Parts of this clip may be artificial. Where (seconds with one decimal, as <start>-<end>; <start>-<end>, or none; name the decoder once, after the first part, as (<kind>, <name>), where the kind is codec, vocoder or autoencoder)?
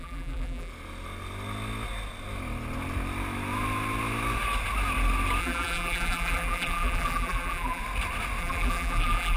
0.0-0.7 (vocoder, BigVGAN v2); 5.4-7.8; 8.4-9.4